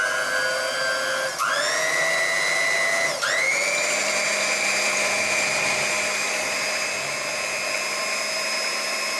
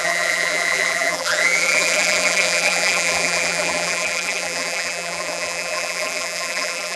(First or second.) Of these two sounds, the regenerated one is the second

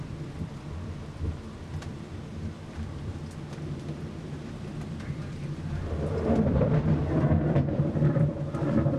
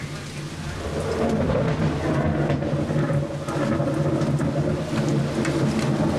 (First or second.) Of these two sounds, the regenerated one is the first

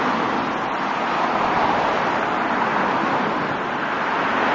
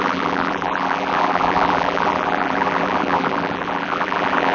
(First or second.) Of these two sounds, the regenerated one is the second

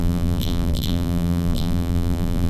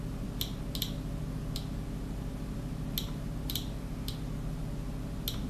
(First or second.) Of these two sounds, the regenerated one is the first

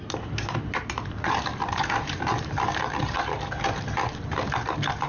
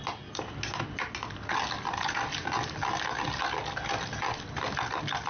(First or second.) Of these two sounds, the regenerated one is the first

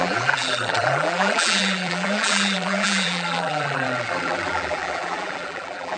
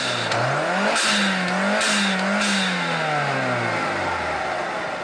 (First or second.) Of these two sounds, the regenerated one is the first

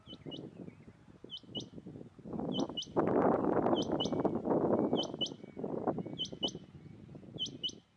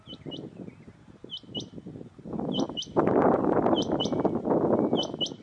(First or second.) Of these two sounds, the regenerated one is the second